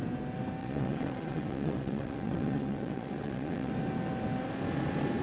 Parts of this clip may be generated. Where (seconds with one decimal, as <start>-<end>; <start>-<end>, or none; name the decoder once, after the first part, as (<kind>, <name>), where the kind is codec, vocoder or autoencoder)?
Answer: 0.6-3.7 (vocoder, WaveNeXt)